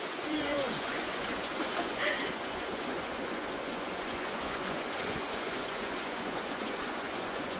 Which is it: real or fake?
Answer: fake